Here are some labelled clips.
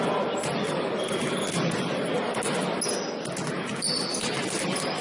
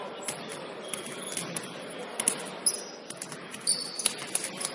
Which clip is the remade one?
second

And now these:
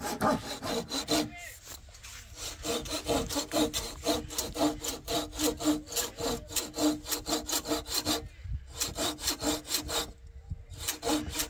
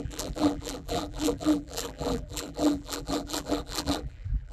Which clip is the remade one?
second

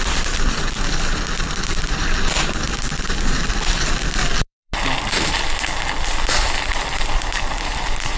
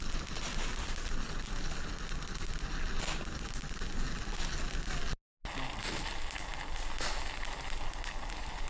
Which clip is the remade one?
first